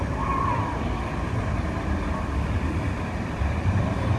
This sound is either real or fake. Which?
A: real